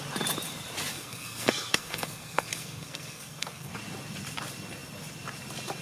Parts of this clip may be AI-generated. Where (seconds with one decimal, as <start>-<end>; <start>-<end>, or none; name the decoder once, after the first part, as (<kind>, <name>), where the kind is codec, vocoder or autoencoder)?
0.9-3.7 (codec, SNAC)